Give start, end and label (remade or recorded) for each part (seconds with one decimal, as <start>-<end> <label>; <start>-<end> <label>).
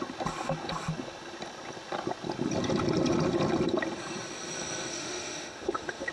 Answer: 0.0-4.9 recorded; 4.9-6.1 remade